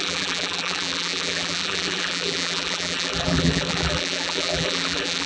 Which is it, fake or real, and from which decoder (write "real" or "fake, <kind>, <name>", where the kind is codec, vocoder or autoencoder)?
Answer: fake, vocoder, BigVGAN v2